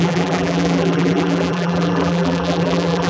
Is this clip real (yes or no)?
no